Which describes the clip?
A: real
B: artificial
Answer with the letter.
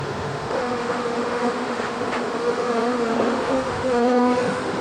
B